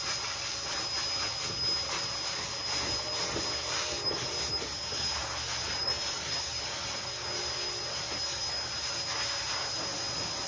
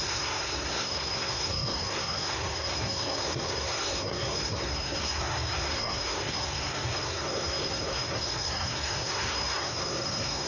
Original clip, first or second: first